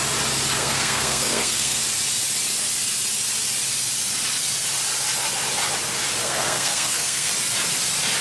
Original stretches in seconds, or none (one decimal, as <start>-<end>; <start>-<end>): 0.0-0.6; 1.8-6.2; 7.3-8.2